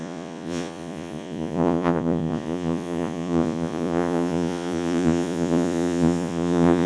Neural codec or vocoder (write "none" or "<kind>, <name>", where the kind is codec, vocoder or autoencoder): vocoder, Vocos